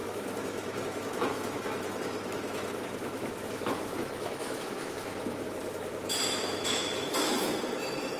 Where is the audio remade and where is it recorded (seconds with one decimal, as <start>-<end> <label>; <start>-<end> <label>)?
0.0-7.5 remade; 7.5-8.2 recorded